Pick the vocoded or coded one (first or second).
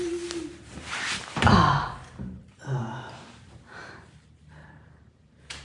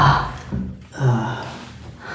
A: first